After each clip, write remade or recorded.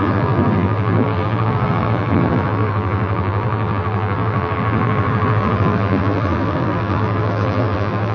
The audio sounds remade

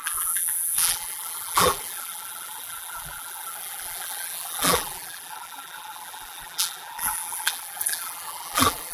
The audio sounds remade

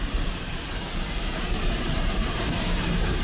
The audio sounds remade